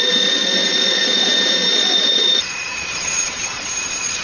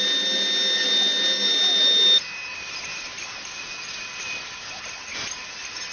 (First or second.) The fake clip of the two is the first